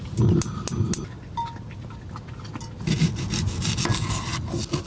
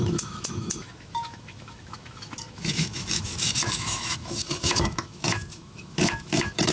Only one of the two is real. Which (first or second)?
first